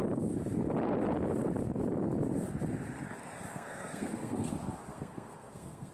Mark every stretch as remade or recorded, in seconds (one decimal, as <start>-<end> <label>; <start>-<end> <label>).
0.0-3.5 recorded; 3.5-4.5 remade; 4.5-4.9 recorded; 4.9-5.9 remade